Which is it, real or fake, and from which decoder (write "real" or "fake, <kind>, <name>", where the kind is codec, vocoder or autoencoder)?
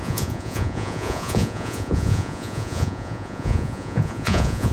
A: fake, vocoder, Vocos